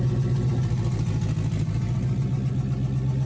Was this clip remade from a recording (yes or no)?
no